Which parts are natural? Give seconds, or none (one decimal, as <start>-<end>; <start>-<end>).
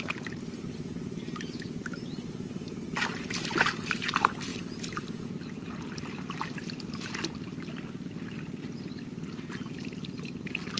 0.0-10.8